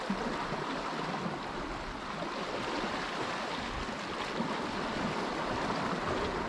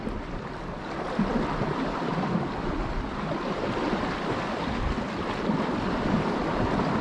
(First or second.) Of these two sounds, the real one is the first